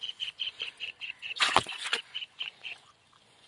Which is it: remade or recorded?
remade